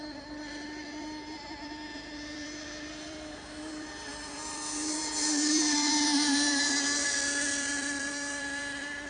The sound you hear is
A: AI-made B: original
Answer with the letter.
A